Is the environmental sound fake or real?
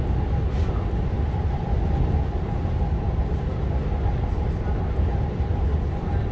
real